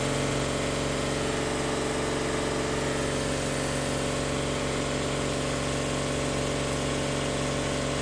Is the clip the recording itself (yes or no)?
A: yes